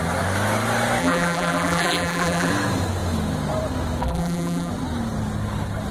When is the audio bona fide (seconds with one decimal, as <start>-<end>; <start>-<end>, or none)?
0.0-1.0; 2.5-4.0; 4.7-5.9